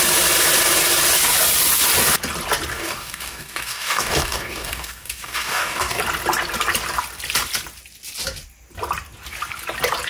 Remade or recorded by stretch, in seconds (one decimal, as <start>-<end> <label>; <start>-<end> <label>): 0.0-2.7 recorded; 2.7-6.0 remade; 6.0-10.1 recorded